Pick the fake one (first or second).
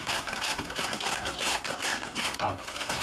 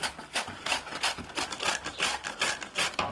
first